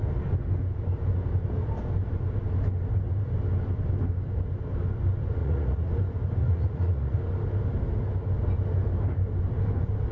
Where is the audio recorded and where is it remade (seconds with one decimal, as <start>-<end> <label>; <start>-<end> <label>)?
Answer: 0.0-5.4 recorded; 5.4-5.9 remade; 5.9-6.4 recorded; 6.4-7.2 remade; 7.2-10.1 recorded